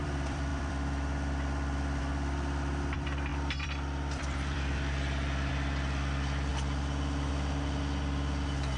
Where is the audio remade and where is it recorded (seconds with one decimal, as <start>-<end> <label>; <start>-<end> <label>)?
0.0-6.5 remade; 6.5-7.3 recorded; 7.3-8.8 remade